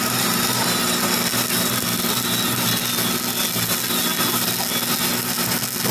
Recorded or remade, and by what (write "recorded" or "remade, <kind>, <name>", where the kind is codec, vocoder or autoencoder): recorded